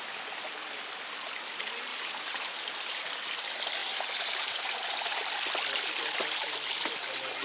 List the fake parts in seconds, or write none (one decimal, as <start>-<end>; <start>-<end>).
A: 1.9-3.1; 3.8-5.2